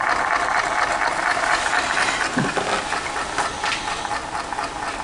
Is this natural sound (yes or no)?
yes